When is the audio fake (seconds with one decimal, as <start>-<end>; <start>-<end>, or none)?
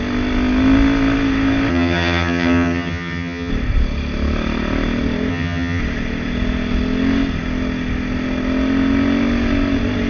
1.7-3.5; 5.3-5.8